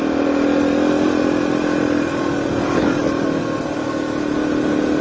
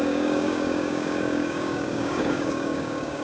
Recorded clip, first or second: first